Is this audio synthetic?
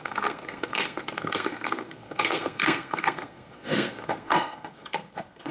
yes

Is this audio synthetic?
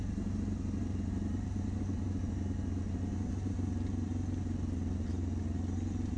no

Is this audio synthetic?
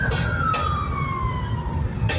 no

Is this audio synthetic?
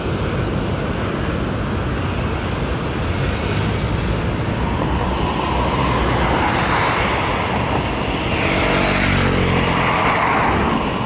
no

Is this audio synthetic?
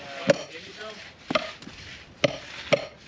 no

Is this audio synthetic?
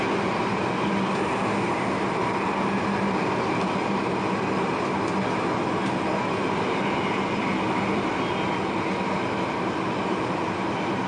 no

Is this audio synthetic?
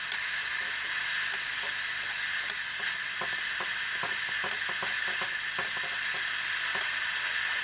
no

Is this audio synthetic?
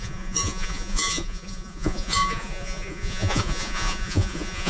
yes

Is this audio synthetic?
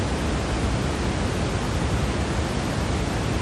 no